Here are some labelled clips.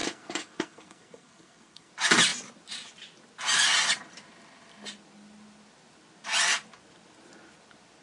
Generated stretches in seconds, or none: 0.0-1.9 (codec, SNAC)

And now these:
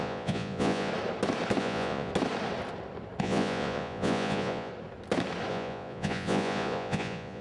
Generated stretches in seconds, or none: 0.0-0.9 (vocoder, Vocos); 1.6-2.1; 3.2-4.7; 5.5-7.4

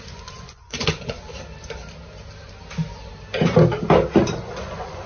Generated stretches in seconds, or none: 0.0-1.3 (vocoder, Vocos); 4.4-5.1